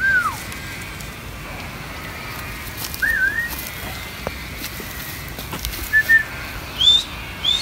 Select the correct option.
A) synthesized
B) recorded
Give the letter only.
B